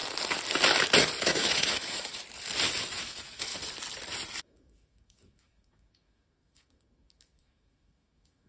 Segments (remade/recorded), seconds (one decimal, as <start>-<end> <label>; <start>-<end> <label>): 0.0-1.2 recorded; 1.2-2.2 remade; 2.2-2.9 recorded; 2.9-3.5 remade; 3.5-4.4 recorded; 4.4-8.5 remade